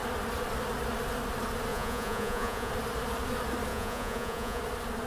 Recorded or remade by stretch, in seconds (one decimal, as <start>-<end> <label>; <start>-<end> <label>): 0.0-1.7 recorded; 1.7-2.7 remade; 2.7-3.7 recorded; 3.7-4.6 remade; 4.6-5.1 recorded